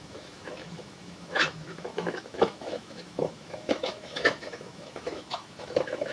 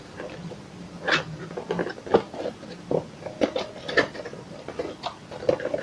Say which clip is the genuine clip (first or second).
second